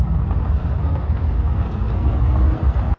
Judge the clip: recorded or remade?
remade